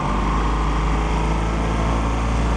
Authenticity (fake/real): real